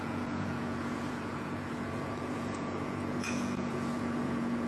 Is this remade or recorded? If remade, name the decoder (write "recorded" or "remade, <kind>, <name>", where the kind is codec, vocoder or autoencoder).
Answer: remade, vocoder, Vocos